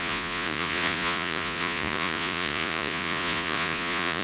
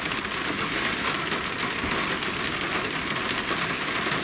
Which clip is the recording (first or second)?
second